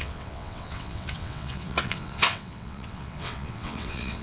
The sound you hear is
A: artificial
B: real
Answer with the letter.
A